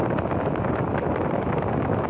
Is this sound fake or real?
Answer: real